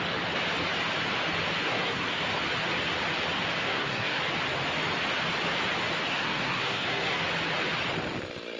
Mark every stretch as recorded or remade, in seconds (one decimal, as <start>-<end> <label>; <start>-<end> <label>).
0.0-1.6 recorded; 1.6-2.2 remade; 2.2-3.6 recorded; 3.6-4.2 remade; 4.2-6.1 recorded; 6.1-7.2 remade; 7.2-8.6 recorded